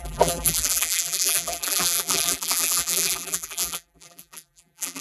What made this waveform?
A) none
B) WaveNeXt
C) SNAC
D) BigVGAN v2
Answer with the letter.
D